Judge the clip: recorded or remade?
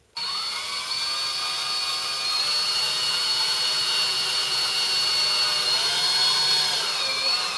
recorded